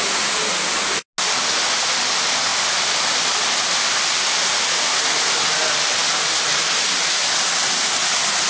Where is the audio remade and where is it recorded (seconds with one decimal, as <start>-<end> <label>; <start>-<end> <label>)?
0.0-8.5 recorded